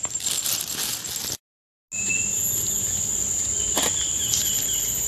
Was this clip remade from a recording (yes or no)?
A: no